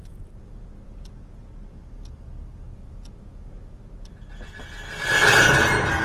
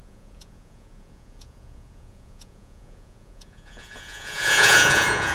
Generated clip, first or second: second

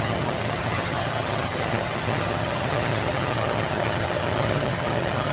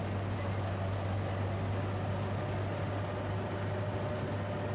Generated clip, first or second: first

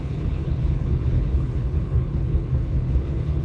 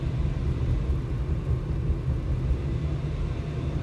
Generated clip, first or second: first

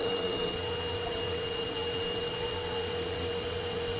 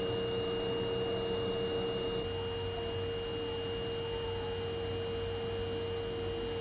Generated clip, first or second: first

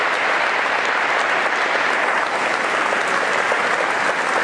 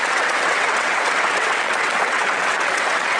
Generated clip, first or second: second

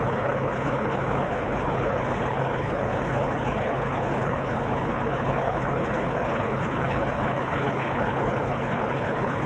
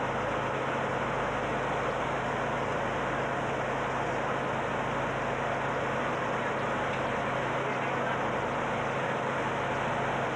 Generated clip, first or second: first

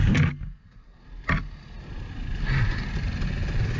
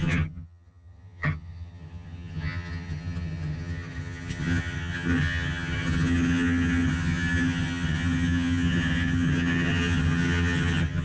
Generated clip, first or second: second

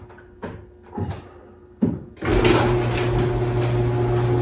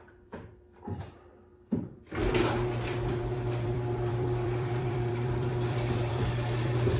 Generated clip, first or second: second